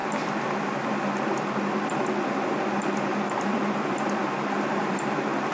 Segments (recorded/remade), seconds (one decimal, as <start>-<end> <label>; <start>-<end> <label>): 0.0-3.3 recorded; 3.3-4.2 remade; 4.2-4.8 recorded; 4.8-5.5 remade